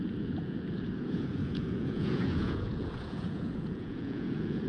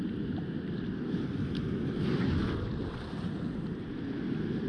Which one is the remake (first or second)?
first